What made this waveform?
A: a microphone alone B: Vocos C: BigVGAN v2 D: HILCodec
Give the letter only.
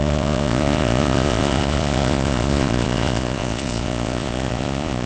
B